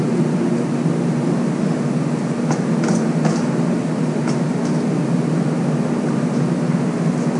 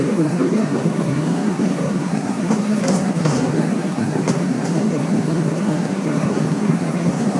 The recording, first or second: first